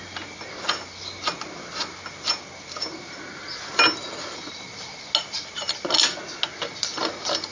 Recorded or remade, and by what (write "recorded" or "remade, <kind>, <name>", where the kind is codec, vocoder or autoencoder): recorded